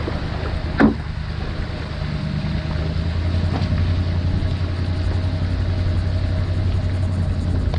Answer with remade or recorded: recorded